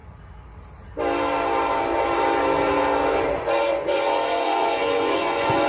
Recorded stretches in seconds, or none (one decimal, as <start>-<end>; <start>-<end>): 0.0-3.4